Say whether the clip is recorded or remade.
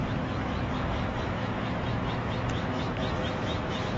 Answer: remade